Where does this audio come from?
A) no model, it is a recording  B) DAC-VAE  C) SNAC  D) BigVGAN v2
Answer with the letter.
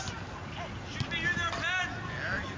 A